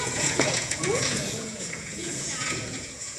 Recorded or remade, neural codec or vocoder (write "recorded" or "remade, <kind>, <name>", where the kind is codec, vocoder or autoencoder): remade, vocoder, Vocos